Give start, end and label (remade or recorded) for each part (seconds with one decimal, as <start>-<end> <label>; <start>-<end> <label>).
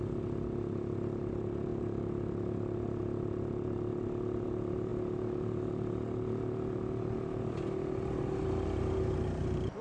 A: 0.0-9.8 recorded